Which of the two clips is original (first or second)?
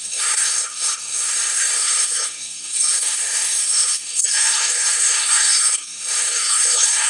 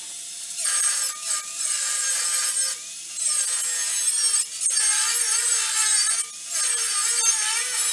second